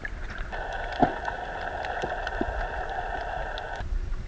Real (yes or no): yes